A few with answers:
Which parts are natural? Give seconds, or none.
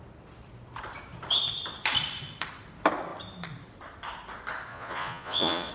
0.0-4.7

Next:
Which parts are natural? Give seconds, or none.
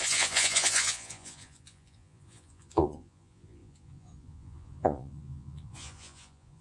none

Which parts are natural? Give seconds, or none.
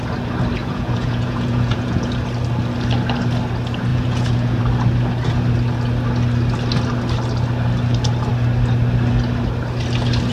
0.0-0.6; 2.1-3.9; 4.6-10.3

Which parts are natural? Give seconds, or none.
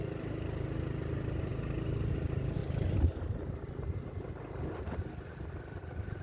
0.0-6.2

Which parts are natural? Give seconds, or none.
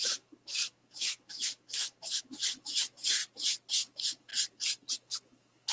3.2-3.7; 4.3-4.9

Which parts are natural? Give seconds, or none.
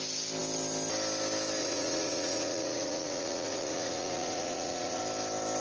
0.0-1.6; 5.0-5.6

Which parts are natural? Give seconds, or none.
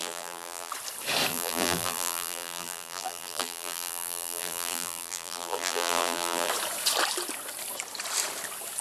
0.7-1.3; 6.5-8.8